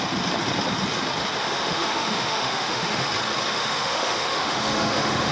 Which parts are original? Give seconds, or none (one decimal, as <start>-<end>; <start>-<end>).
0.0-1.4; 3.1-3.5